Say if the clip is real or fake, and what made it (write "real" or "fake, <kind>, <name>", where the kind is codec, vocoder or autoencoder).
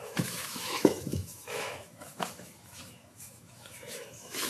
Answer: fake, autoencoder, DAC-VAE